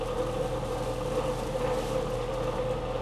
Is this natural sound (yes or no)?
yes